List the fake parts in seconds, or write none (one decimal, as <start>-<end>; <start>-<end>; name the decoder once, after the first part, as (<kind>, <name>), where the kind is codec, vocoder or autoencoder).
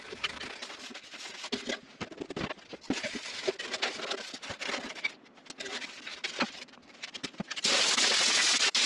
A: 6.1-7.4 (vocoder, BigVGAN v2)